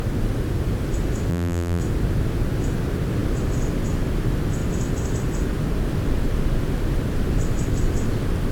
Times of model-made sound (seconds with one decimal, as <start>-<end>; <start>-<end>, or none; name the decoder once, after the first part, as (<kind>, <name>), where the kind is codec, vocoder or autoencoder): 1.3-1.8 (vocoder, BigVGAN v2)